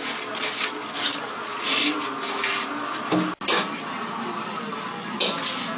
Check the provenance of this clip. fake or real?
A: real